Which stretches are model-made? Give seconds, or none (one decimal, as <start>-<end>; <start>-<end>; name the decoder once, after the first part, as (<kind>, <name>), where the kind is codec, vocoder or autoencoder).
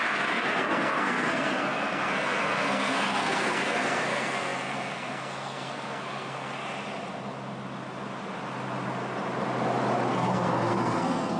0.0-6.6 (codec, SNAC); 10.1-11.4